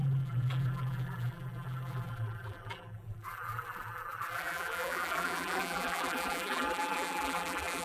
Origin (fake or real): fake